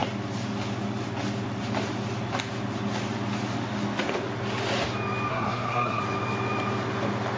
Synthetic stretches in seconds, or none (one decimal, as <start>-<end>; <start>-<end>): 5.3-6.0